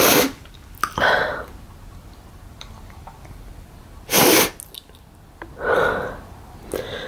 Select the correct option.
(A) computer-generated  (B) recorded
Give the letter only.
B